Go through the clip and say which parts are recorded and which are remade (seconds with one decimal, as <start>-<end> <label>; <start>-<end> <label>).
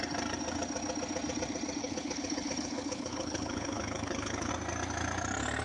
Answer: 0.0-1.8 recorded; 1.8-4.5 remade; 4.5-5.6 recorded